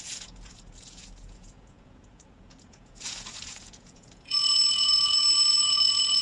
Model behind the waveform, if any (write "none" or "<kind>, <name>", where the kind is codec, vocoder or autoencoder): vocoder, Vocos